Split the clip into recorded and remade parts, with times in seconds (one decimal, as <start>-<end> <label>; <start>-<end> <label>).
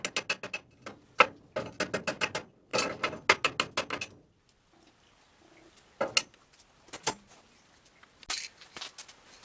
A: 0.0-9.4 recorded